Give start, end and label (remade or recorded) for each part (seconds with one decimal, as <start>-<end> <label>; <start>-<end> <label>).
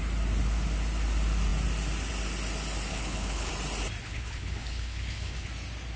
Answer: 0.0-2.9 recorded; 2.9-3.5 remade; 3.5-4.0 recorded; 4.0-5.5 remade; 5.5-6.0 recorded